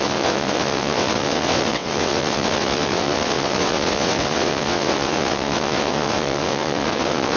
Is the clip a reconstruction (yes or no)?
yes